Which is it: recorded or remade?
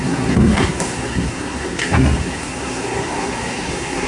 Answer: remade